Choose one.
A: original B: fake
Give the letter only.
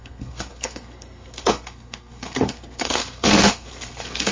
B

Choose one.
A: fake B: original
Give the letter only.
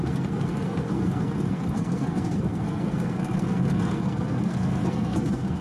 A